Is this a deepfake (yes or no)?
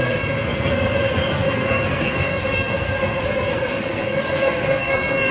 yes